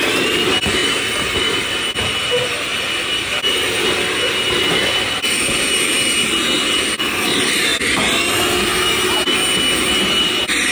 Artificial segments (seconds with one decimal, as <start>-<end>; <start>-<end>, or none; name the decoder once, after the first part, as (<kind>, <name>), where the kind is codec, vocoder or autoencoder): 0.0-0.8 (vocoder, BigVGAN v2); 1.7-8.7; 9.9-10.7